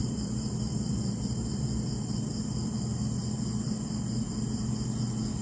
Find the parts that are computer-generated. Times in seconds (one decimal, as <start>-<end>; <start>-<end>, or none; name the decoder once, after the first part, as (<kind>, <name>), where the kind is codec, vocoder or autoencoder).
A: 0.0-2.2 (vocoder, BigVGAN v2)